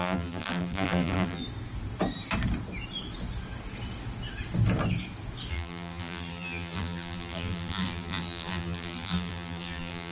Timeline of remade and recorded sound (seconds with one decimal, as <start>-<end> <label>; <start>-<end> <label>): 0.0-1.4 remade; 1.4-5.5 recorded; 5.5-10.1 remade